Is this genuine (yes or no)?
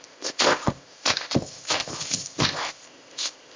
no